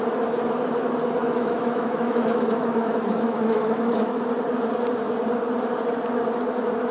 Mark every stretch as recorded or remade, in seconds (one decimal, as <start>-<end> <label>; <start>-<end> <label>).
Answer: 0.0-1.2 recorded; 1.2-4.2 remade; 4.2-6.9 recorded